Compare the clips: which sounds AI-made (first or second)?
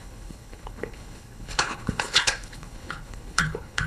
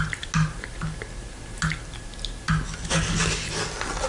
first